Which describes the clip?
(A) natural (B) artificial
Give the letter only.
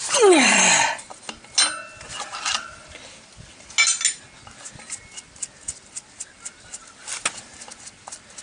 A